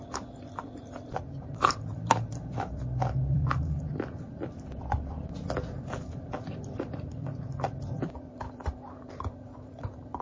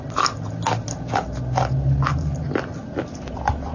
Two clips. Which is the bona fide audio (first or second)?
second